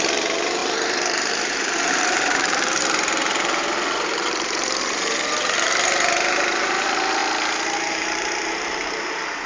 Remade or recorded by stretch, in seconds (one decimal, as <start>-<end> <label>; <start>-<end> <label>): 0.0-7.2 remade; 7.2-7.9 recorded; 7.9-9.5 remade